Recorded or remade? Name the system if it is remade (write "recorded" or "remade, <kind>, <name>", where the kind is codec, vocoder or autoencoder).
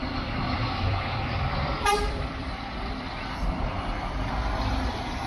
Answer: remade, vocoder, BigVGAN v2